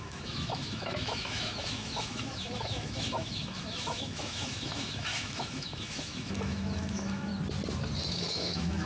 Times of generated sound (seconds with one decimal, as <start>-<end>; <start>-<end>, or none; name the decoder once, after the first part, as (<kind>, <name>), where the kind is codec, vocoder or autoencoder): 0.0-7.3 (autoencoder, DAC-VAE); 8.1-8.9